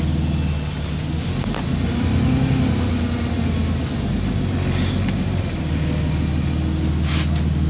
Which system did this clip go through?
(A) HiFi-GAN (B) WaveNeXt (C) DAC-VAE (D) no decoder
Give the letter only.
D